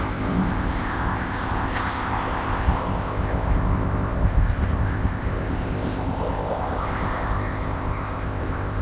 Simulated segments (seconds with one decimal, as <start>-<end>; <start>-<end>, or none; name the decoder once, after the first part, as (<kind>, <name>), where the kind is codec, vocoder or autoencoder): 0.0-8.8 (codec, ZipCodec)